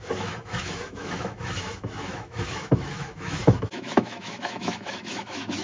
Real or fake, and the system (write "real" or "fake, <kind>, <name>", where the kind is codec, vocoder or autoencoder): fake, autoencoder, DAC-VAE